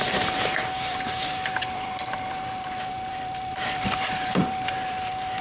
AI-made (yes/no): yes